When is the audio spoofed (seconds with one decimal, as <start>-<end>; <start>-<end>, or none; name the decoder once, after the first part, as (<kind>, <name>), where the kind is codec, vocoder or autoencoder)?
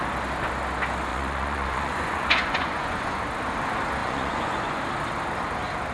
1.1-3.2 (vocoder, Vocos); 4.0-4.8